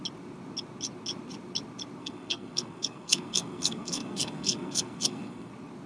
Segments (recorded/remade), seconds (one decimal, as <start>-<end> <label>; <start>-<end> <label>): 0.0-2.0 recorded; 2.0-5.5 remade; 5.5-5.9 recorded